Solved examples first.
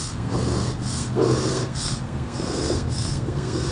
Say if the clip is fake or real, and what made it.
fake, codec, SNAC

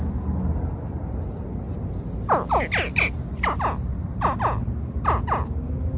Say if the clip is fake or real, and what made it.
real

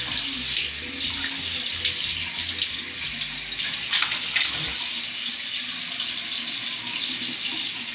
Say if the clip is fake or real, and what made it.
real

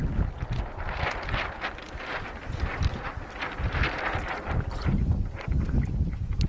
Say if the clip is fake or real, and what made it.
real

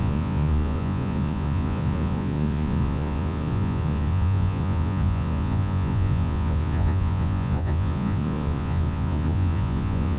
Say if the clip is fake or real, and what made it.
fake, vocoder, Vocos